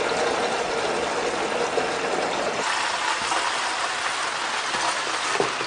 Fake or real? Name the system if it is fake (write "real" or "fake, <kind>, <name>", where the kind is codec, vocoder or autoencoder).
real